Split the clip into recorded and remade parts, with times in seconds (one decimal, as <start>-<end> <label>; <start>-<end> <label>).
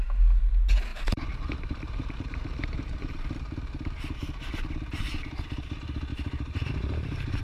0.0-0.9 recorded; 0.9-5.0 remade; 5.0-6.1 recorded; 6.1-7.4 remade